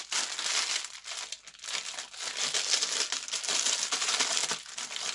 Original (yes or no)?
yes